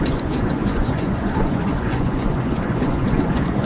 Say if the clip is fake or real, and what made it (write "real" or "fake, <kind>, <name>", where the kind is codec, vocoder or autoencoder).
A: fake, vocoder, Vocos